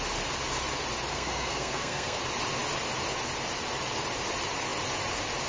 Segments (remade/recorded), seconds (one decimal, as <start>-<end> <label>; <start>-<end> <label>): 0.0-1.1 recorded; 1.1-2.2 remade; 2.2-5.5 recorded